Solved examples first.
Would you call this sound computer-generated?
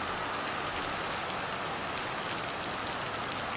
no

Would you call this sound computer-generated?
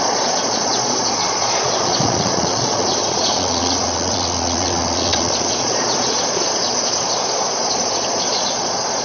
yes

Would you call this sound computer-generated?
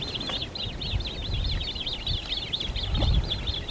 no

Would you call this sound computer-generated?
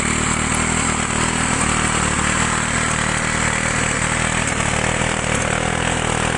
no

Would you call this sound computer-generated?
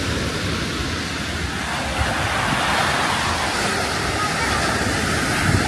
no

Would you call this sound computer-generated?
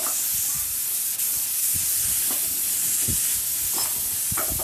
no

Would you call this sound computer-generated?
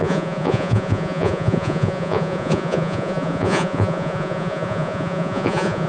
yes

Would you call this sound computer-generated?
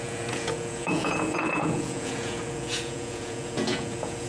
yes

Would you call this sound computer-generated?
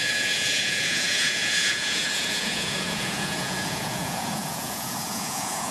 yes